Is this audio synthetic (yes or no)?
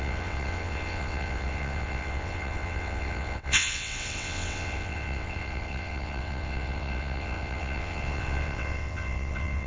yes